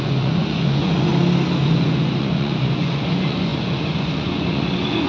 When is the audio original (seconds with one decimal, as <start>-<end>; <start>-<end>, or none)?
1.1-1.6